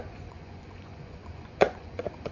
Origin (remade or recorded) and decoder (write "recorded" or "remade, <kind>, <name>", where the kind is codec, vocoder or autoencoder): remade, vocoder, Vocos